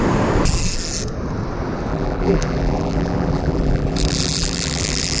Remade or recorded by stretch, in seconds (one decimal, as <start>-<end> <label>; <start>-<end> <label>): 0.0-1.9 recorded; 1.9-5.2 remade